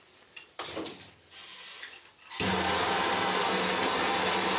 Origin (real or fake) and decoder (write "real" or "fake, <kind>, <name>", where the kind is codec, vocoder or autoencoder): real